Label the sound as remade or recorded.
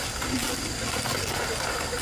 recorded